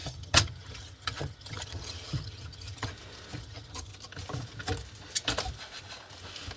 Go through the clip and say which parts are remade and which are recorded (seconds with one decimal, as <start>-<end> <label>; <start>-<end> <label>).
0.0-2.9 remade; 2.9-3.4 recorded; 3.4-3.9 remade; 3.9-6.6 recorded